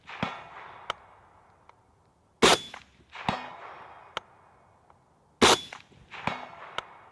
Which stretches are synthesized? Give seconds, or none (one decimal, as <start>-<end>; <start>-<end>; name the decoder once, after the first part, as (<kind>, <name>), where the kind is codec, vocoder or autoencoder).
none